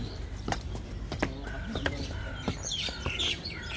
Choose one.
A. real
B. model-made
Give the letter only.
A